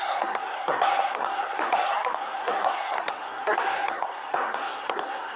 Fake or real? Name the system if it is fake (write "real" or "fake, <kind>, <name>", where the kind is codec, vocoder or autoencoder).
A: fake, codec, SNAC